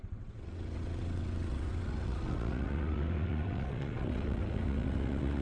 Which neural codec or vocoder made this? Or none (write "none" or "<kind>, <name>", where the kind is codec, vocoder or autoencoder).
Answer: vocoder, WaveNeXt